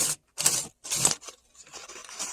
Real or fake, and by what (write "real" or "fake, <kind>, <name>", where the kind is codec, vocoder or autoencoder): real